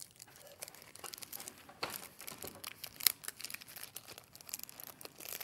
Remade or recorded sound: remade